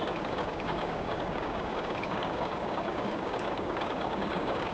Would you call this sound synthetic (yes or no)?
yes